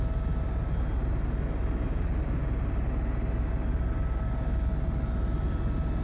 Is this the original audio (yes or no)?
yes